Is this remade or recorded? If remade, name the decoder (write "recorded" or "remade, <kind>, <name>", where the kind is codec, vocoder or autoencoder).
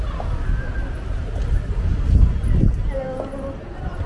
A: recorded